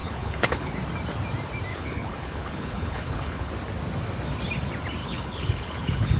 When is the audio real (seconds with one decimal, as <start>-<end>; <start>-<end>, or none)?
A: 0.7-1.7; 3.5-5.0